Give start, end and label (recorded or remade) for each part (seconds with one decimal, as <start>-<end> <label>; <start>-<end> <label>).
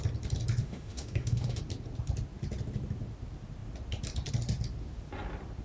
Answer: 0.0-0.6 recorded; 0.6-1.6 remade; 1.6-5.6 recorded